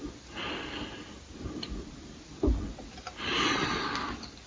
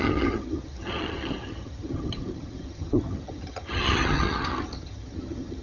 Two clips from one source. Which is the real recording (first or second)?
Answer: first